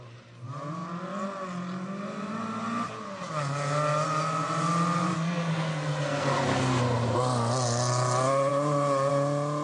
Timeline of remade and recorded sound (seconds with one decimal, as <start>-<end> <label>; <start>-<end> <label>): 0.0-5.1 recorded; 5.1-6.8 remade; 6.8-9.6 recorded

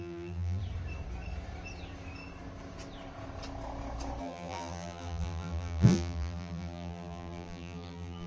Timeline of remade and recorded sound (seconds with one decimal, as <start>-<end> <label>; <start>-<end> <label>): 0.0-0.6 remade; 0.6-4.2 recorded; 4.2-8.3 remade

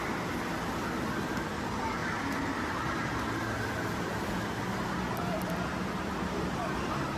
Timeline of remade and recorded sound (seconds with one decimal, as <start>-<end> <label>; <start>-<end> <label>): 0.0-7.2 recorded

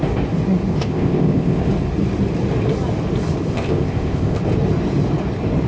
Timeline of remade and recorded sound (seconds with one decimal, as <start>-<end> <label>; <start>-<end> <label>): 0.0-0.7 recorded; 0.7-1.7 remade; 1.7-3.5 recorded; 3.5-4.4 remade; 4.4-5.7 recorded

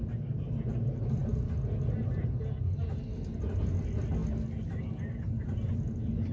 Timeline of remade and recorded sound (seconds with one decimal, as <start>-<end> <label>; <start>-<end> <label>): 0.0-6.3 recorded

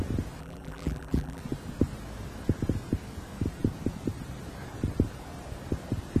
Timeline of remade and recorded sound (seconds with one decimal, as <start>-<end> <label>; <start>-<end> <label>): 0.0-0.4 recorded; 0.4-1.4 remade; 1.4-6.2 recorded

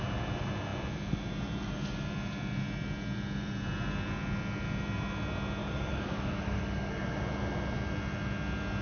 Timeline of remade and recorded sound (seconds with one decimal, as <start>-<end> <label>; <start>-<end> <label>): 0.0-5.6 recorded; 5.6-6.9 remade; 6.9-8.8 recorded

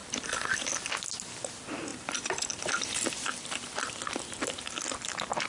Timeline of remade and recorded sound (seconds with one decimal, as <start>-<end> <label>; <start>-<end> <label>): 0.0-0.7 remade; 0.7-1.9 recorded; 1.9-4.0 remade; 4.0-5.5 recorded